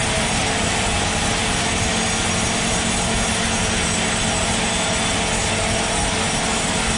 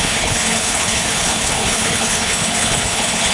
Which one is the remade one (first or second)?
second